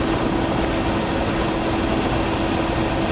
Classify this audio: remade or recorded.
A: recorded